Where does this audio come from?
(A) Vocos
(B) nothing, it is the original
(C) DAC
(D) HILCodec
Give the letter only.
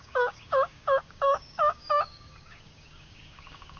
C